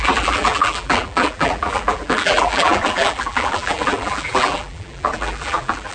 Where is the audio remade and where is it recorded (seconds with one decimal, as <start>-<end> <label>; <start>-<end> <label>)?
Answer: 0.0-5.9 remade